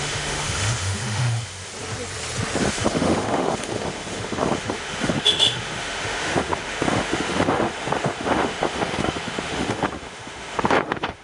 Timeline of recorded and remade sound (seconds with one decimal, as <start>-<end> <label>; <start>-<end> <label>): 0.0-1.7 remade; 1.7-2.7 recorded; 2.7-11.2 remade